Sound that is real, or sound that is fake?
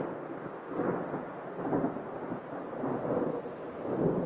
real